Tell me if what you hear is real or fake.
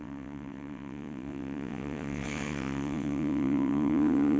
fake